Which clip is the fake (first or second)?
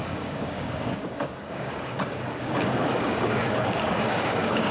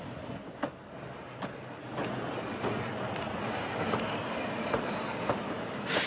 first